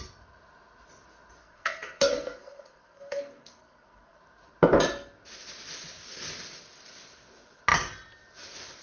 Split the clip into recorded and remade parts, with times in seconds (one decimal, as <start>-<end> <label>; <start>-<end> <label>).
0.0-1.4 recorded; 1.4-4.2 remade; 4.2-8.8 recorded